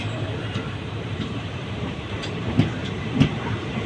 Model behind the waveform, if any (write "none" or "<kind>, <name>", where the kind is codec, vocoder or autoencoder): vocoder, BigVGAN v2